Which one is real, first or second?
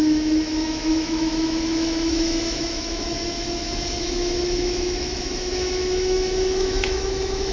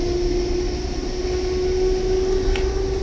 second